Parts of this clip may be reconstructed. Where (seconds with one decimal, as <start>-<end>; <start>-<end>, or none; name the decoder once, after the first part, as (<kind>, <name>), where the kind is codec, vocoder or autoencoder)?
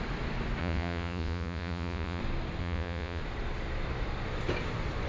0.6-2.2 (vocoder, Vocos); 2.6-3.2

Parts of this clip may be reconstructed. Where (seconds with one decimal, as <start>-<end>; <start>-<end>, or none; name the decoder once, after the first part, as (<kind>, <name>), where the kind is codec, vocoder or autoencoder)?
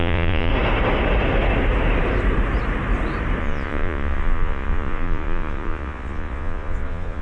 0.0-0.5 (vocoder, Vocos); 3.4-7.2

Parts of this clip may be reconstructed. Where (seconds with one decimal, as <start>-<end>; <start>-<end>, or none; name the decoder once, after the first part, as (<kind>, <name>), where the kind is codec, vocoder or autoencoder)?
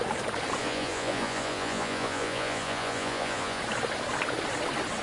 0.6-3.6 (vocoder, Vocos)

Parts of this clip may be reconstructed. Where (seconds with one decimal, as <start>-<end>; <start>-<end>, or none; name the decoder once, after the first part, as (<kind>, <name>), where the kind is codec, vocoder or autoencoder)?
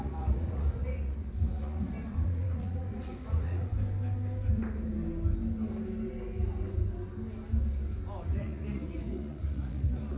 0.0-3.7 (vocoder, Vocos); 8.2-10.2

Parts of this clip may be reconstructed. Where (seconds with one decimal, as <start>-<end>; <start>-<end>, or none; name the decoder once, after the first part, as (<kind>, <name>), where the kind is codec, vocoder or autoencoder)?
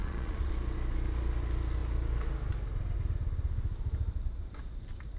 0.0-0.5 (vocoder, Vocos)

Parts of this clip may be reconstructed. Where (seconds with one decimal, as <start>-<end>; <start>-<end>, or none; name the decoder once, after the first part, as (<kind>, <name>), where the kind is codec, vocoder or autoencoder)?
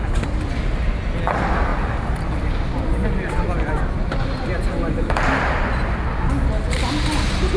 none